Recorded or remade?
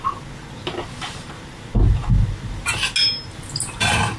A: recorded